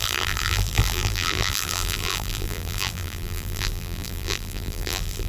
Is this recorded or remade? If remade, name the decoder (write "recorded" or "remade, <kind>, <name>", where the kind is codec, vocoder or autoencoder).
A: remade, vocoder, BigVGAN v2